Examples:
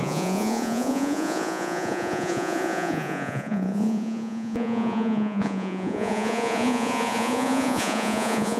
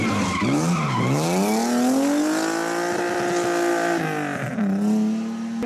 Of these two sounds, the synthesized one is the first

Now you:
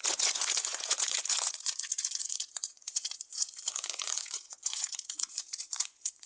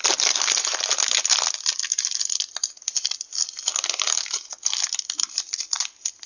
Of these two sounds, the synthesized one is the first